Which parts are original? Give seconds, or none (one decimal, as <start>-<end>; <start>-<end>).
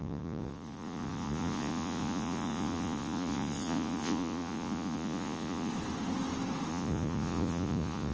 5.7-6.7